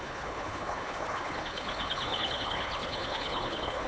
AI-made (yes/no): yes